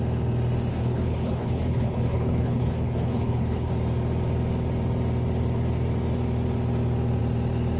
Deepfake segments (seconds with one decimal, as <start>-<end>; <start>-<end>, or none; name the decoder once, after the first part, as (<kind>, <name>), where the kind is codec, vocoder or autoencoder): 0.7-3.7 (codec, HILCodec)